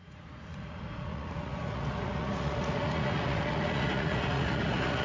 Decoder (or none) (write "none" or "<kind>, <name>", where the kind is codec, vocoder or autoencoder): vocoder, Vocos